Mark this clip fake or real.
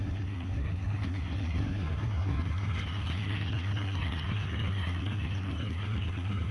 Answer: fake